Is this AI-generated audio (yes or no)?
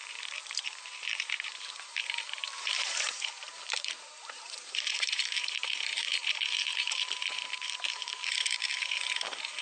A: yes